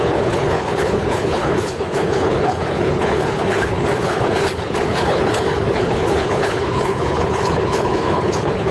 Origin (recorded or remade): remade